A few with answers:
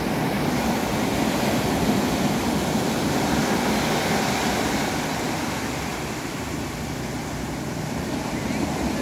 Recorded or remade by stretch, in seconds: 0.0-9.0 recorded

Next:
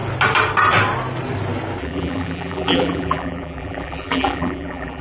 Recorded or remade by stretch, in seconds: 0.0-1.8 recorded; 1.8-5.0 remade

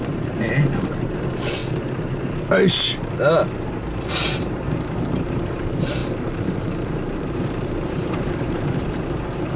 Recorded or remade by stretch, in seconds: 0.0-1.6 remade; 1.6-4.1 recorded; 4.1-9.6 remade

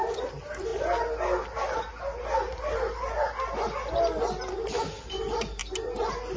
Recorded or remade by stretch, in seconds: 0.0-0.7 remade; 0.7-4.5 recorded; 4.5-5.6 remade; 5.6-6.4 recorded

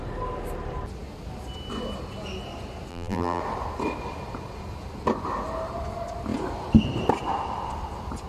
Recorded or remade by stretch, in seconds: 0.0-2.9 recorded; 2.9-3.4 remade; 3.4-8.3 recorded